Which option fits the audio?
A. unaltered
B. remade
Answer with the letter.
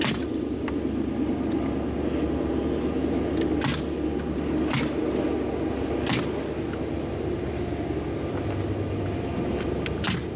A